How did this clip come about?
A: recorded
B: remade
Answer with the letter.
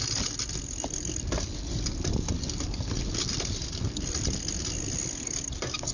A